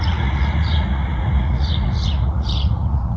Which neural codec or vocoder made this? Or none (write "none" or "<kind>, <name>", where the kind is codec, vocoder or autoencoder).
vocoder, Vocos